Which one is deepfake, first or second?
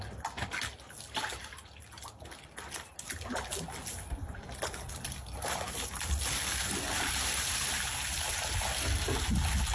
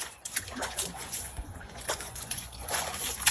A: second